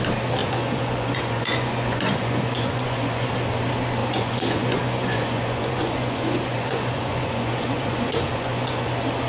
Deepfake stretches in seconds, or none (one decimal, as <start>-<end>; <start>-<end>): 0.4-3.3; 4.0-8.9